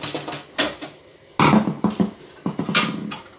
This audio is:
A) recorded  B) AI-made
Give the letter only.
A